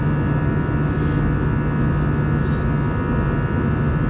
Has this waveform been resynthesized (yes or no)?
no